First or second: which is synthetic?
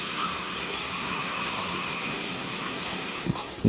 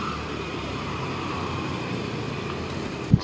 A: first